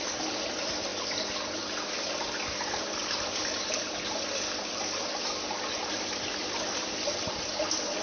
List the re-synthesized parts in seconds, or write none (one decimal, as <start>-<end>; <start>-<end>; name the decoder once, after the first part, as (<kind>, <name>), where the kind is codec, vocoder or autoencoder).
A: none

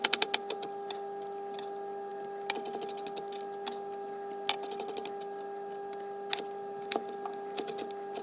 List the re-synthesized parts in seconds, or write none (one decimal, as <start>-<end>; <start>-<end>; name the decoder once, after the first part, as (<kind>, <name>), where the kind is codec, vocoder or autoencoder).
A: none

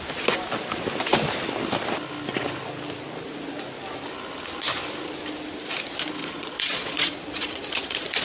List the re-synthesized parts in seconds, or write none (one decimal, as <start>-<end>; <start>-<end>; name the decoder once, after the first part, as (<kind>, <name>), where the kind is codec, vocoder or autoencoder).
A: 6.2-8.2 (vocoder, Vocos)

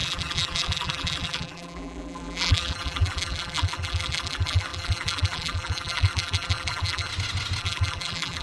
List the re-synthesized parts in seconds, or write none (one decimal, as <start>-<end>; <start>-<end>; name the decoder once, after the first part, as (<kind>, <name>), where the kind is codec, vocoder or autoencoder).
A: 0.0-7.1 (vocoder, BigVGAN v2); 7.6-8.4

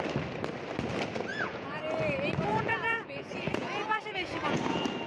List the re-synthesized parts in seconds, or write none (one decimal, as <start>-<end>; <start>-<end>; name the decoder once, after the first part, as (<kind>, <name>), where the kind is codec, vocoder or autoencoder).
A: 1.3-1.8 (vocoder, Vocos); 2.5-4.6

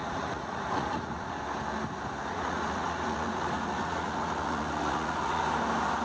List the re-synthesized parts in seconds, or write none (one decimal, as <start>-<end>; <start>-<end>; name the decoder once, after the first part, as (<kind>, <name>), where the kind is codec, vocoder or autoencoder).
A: 0.0-1.4 (vocoder, Vocos); 2.3-5.4

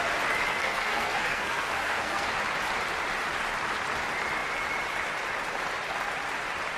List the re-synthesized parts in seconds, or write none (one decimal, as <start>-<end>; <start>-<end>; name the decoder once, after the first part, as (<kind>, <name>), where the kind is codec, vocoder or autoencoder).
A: 0.5-2.3 (codec, SNAC)